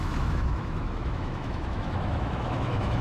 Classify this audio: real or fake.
fake